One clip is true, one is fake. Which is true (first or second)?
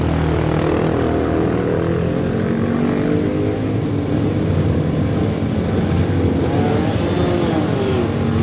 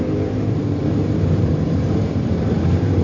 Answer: first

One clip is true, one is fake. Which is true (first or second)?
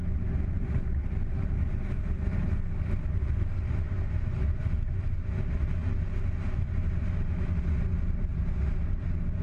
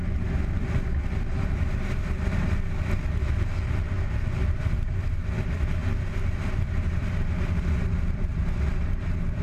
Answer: first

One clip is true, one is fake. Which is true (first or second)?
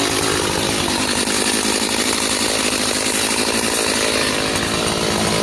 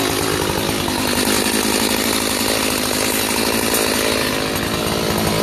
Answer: second